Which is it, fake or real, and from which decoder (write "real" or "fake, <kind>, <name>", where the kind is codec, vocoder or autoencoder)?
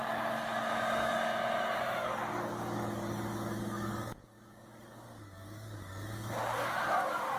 fake, codec, DAC